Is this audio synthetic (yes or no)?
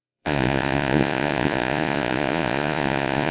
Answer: yes